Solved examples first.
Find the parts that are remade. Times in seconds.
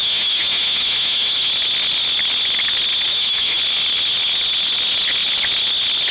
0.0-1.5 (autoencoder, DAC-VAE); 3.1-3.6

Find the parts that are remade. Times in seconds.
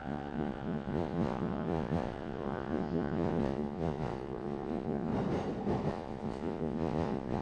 0.0-5.1 (vocoder, Vocos); 5.9-7.4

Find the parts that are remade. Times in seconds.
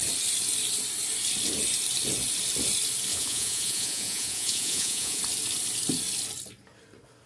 3.1-5.2 (vocoder, Vocos)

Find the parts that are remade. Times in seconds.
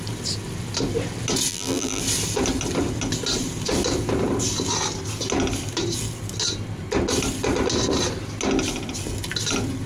1.5-2.0 (vocoder, BigVGAN v2)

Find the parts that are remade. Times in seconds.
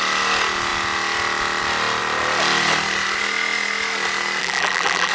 4.4-5.1 (vocoder, BigVGAN v2)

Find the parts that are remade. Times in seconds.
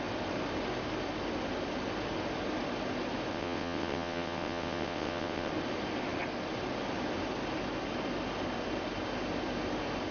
3.3-5.5 (vocoder, WaveNeXt)